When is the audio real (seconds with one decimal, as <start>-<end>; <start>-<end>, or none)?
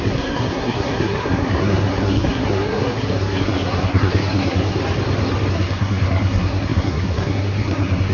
4.8-5.5